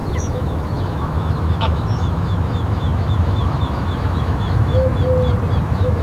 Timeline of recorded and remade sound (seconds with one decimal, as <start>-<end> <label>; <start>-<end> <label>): 0.0-4.9 remade; 4.9-5.6 recorded; 5.6-6.0 remade